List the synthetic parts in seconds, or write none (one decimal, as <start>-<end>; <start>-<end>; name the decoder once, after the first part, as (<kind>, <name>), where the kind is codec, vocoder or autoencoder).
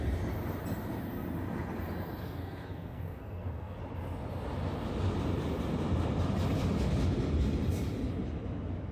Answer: 2.2-3.8 (codec, SNAC)